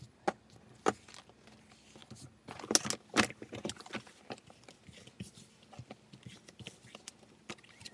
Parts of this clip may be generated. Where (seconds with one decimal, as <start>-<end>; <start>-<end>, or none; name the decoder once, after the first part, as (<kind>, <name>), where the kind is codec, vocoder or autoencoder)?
none